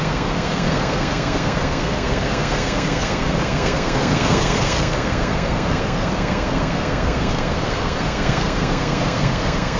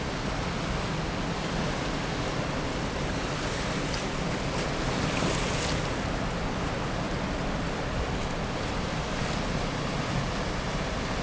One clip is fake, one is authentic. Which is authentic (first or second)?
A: second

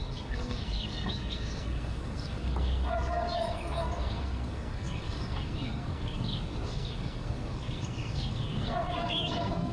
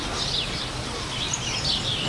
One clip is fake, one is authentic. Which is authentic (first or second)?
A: second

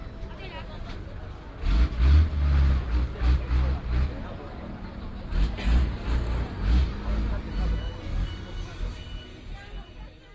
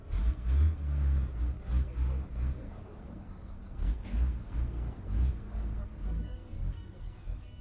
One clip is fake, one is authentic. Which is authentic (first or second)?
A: first